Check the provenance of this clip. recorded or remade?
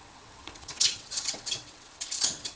remade